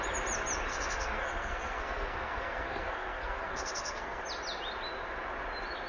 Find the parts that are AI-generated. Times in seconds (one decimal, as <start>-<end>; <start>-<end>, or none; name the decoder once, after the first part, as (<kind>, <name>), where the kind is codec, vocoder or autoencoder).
0.7-4.2 (codec, SNAC)